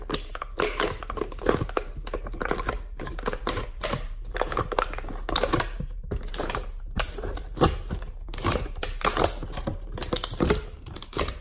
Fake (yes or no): yes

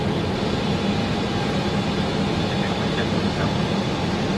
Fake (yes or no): no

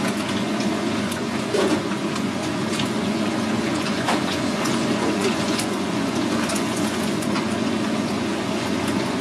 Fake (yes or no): yes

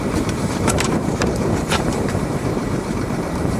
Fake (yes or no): yes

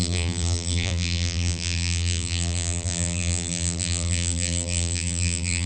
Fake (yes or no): yes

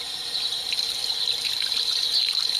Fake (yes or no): yes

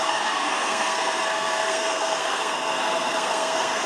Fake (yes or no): yes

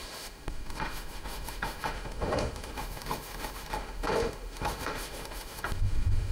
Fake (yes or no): yes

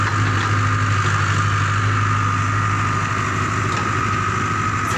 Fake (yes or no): no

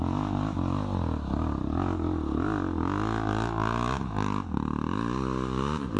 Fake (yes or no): no